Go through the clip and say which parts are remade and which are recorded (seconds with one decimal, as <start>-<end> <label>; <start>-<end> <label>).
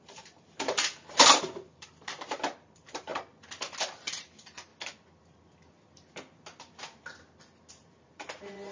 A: 0.0-3.1 remade; 3.1-4.1 recorded; 4.1-4.7 remade; 4.7-7.7 recorded; 7.7-8.7 remade